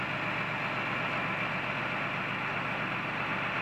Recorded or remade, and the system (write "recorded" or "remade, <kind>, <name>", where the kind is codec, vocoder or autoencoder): recorded